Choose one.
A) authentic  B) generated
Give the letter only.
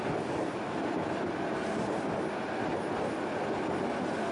A